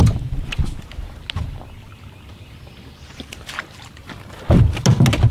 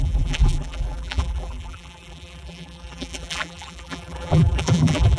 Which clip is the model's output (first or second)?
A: second